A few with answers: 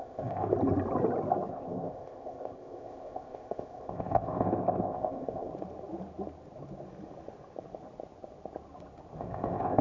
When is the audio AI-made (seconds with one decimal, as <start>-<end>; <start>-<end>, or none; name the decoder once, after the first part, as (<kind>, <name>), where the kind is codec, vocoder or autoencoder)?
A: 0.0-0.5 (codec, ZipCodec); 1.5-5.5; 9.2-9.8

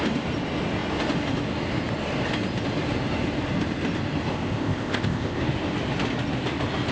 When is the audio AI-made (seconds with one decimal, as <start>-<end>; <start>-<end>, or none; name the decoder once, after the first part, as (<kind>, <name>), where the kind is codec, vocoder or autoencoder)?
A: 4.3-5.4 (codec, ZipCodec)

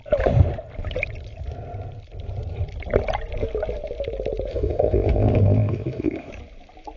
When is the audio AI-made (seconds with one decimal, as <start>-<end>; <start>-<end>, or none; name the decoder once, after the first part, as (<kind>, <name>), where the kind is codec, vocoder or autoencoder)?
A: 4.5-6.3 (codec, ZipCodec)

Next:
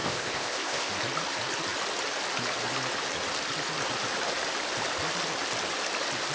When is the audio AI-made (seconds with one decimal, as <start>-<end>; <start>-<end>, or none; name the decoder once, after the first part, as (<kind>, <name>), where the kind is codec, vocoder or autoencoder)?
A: 0.0-0.9 (codec, ZipCodec)

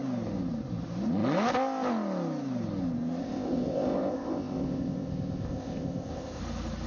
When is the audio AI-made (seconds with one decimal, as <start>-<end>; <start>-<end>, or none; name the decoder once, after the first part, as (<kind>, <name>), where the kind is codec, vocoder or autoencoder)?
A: 3.2-6.4 (codec, ZipCodec)

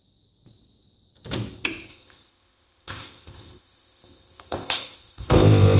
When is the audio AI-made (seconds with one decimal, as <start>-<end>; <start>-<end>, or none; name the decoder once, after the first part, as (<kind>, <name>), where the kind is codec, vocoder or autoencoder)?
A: 1.9-5.8 (codec, ZipCodec)

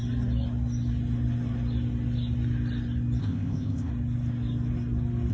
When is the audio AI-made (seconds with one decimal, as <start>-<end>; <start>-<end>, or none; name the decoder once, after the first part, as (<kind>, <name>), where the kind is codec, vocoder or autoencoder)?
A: 3.2-3.9 (codec, ZipCodec)